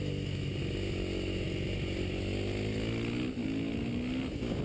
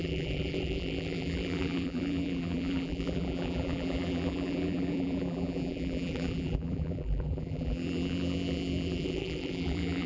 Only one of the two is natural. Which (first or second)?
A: first